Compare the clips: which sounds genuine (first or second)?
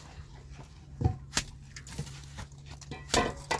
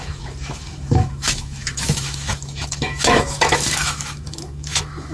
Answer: first